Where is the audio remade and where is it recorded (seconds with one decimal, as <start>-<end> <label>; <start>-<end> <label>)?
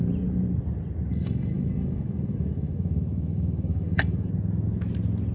0.0-1.1 recorded; 1.1-4.3 remade; 4.3-5.3 recorded